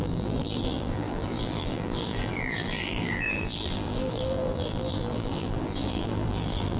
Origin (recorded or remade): remade